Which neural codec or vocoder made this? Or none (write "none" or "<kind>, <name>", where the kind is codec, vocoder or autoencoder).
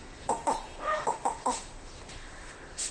autoencoder, DAC-VAE